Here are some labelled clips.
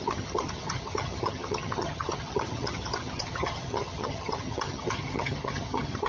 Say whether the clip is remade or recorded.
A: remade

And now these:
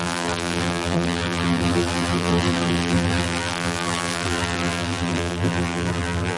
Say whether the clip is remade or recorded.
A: remade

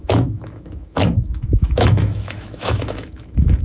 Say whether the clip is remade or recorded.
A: remade